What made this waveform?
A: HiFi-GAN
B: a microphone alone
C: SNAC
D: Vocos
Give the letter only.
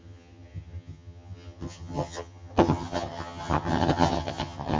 A